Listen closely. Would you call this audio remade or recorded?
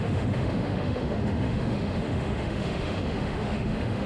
remade